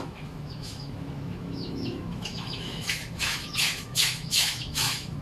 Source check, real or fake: fake